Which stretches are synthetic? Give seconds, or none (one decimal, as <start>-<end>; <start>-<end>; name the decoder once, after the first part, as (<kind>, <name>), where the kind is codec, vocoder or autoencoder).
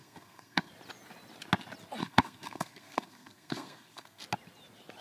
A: 0.0-0.7 (codec, SNAC); 2.0-4.2